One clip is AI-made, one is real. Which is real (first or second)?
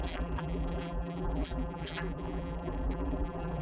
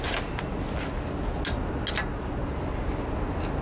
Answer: second